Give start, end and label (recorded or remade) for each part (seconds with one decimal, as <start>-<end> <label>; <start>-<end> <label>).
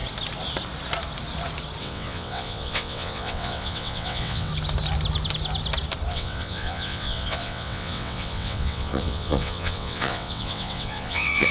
0.0-1.8 recorded; 1.8-4.5 remade; 4.5-6.1 recorded; 6.1-11.5 remade